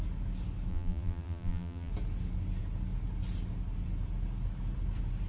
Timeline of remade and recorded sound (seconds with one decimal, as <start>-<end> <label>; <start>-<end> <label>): 0.0-0.7 recorded; 0.7-1.9 remade; 1.9-5.3 recorded